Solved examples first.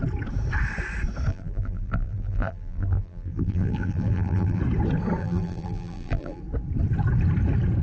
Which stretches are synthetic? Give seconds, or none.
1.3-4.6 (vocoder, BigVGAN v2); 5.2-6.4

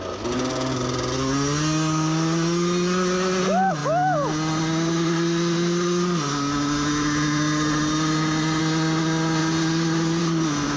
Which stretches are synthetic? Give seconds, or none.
none

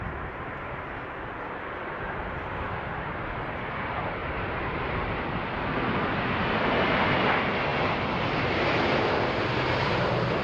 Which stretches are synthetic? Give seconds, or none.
4.2-4.8 (vocoder, BigVGAN v2)